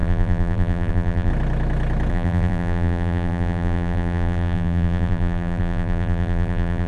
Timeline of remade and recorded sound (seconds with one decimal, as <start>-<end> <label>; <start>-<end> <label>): 0.0-1.3 remade; 1.3-2.1 recorded; 2.1-6.9 remade